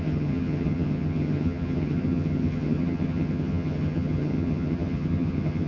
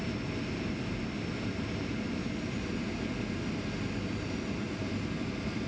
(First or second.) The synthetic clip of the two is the first